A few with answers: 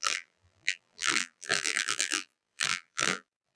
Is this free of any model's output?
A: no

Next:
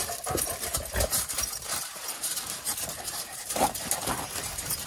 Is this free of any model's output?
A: no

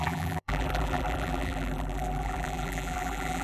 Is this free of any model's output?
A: no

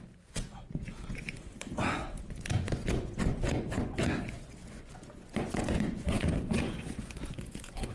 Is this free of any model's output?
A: no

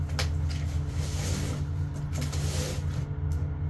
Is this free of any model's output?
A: yes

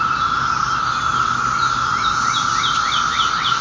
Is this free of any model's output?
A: yes